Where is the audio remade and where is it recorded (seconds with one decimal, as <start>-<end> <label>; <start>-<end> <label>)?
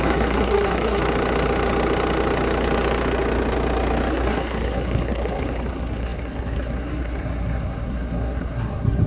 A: 0.0-1.0 remade; 1.0-4.1 recorded; 4.1-9.1 remade